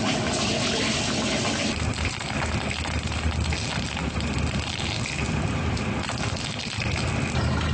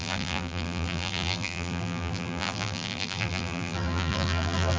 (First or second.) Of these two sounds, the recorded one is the first